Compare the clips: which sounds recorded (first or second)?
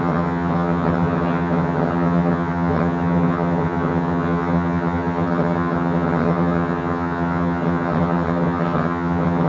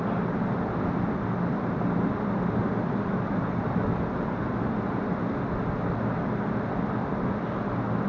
second